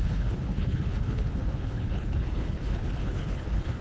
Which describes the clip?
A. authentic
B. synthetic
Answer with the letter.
B